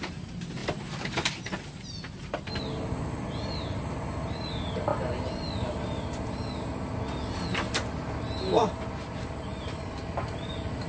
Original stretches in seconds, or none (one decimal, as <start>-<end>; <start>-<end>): 0.0-10.9